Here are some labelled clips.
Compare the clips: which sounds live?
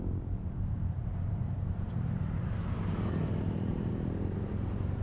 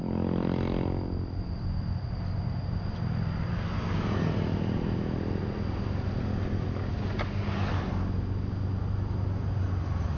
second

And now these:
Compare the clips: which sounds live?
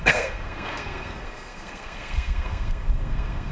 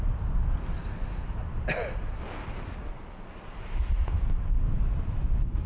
second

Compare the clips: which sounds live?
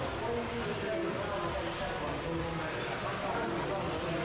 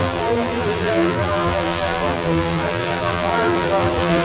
first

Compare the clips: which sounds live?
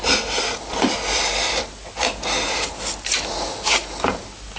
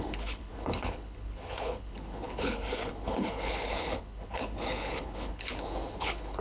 first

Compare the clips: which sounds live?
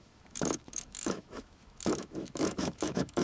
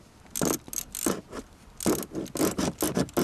second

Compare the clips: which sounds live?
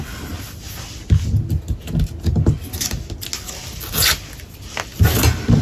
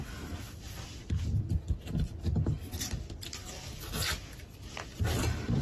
first